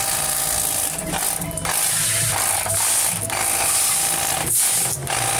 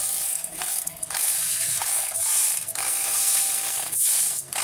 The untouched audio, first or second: first